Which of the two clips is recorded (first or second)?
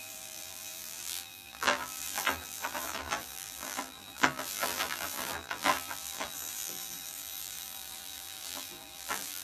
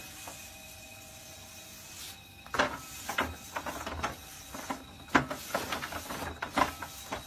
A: second